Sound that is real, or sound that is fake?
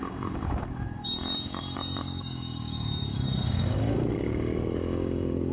fake